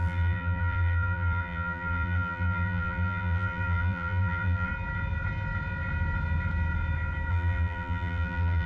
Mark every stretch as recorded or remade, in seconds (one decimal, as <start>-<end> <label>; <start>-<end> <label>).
0.0-4.7 remade; 4.7-7.3 recorded; 7.3-8.7 remade